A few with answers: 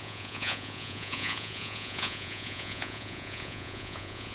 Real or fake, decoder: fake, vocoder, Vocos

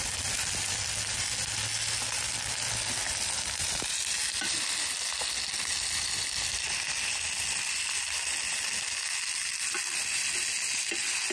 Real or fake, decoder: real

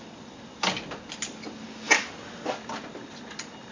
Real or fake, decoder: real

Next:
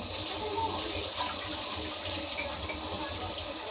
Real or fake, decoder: real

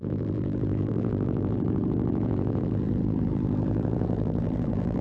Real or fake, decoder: fake, vocoder, BigVGAN v2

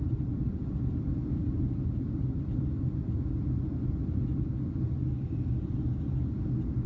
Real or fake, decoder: real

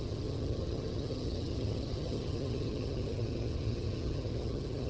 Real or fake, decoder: fake, vocoder, HiFi-GAN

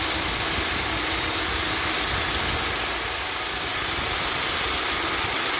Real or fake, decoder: real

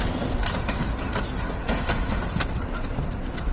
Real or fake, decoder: real